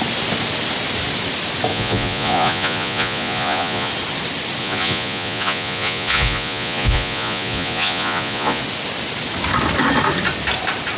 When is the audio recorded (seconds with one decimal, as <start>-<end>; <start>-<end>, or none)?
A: 0.0-1.7; 3.9-4.6; 8.6-11.0